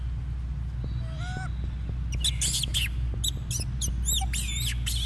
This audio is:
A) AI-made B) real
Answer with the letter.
B